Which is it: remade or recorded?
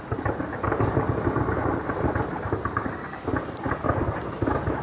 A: recorded